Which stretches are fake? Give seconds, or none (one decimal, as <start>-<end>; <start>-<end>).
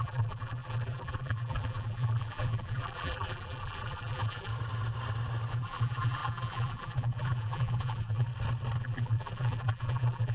0.0-4.5; 5.5-8.3; 8.8-10.3